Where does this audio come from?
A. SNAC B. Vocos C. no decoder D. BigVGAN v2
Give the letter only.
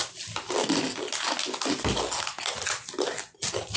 C